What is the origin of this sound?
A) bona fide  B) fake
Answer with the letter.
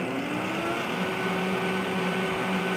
A